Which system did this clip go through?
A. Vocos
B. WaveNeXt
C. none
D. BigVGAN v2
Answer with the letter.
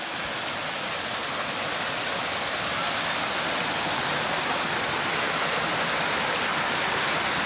C